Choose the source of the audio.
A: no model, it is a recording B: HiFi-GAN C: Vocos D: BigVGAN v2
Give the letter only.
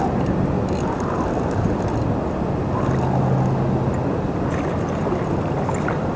A